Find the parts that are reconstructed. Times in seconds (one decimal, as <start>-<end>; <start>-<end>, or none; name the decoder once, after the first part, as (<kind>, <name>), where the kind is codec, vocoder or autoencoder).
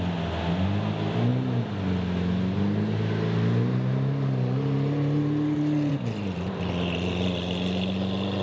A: none